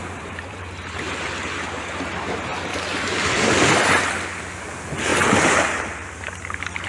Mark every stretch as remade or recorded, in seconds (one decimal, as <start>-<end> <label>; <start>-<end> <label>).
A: 0.0-1.1 remade; 1.1-2.7 recorded; 2.7-3.4 remade; 3.4-6.9 recorded